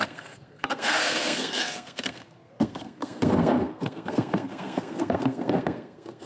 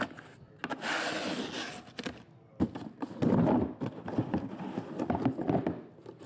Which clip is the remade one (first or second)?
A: first